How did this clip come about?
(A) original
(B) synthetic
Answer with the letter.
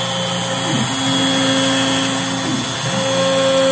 A